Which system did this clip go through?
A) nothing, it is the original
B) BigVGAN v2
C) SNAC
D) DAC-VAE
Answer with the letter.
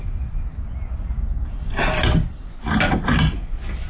A